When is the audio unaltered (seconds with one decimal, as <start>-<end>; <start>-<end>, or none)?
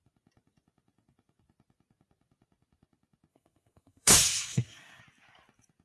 0.0-3.3; 5.0-5.8